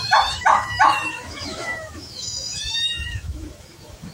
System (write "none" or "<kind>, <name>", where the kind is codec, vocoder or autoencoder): autoencoder, DAC-VAE